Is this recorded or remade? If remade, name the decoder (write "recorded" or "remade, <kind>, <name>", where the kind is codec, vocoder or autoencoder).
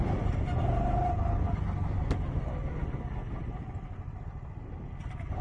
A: recorded